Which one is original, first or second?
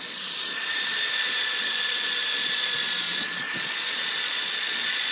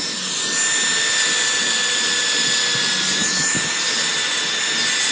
second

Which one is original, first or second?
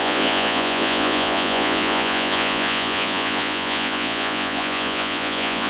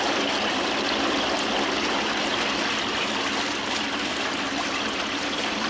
second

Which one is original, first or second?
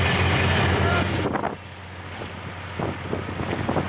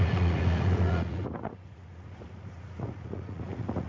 first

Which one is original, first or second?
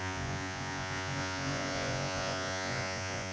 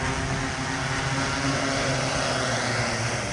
second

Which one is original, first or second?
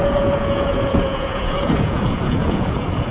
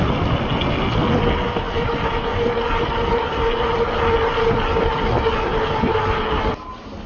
second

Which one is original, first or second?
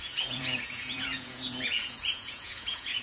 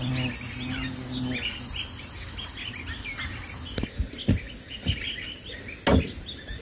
second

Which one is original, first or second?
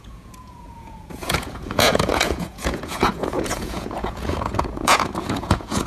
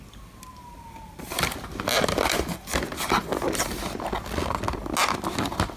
second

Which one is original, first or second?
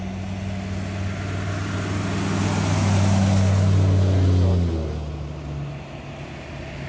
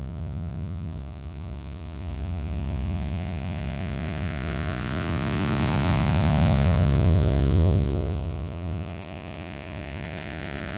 first